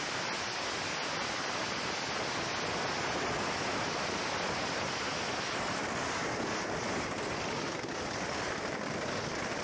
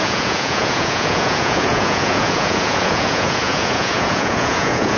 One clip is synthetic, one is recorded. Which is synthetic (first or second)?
second